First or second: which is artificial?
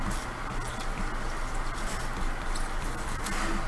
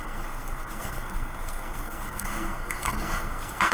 second